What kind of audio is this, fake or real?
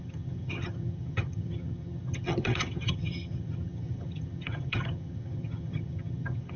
fake